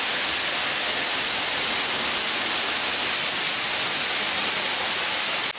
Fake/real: real